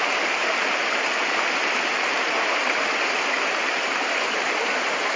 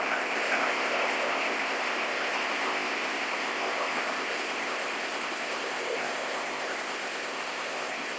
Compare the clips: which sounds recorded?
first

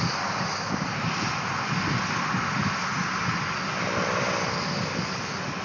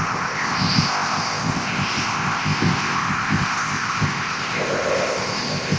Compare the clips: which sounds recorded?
first